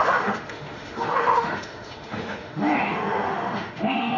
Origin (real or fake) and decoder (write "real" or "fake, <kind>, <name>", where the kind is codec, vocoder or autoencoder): fake, autoencoder, DAC-VAE